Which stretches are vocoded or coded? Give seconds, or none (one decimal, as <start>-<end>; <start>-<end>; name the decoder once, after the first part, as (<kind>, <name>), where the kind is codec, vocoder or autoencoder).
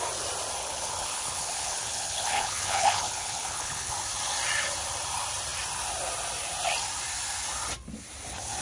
0.6-3.9 (codec, HILCodec)